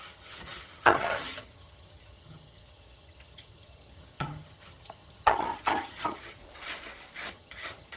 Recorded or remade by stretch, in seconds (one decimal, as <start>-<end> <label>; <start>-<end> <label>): 0.0-6.4 remade; 6.4-7.3 recorded; 7.3-8.0 remade